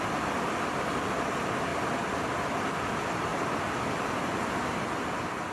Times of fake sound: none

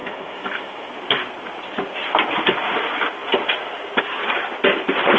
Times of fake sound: 0.0-0.9 (autoencoder, DAC-VAE)

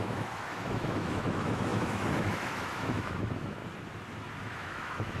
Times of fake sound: 0.0-3.6 (autoencoder, DAC-VAE); 4.4-5.2

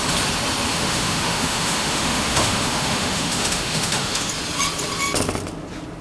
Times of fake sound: 0.7-4.3 (autoencoder, DAC-VAE)

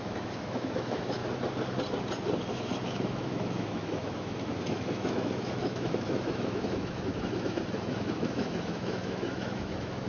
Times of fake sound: 0.0-1.2 (autoencoder, DAC-VAE); 2.5-10.1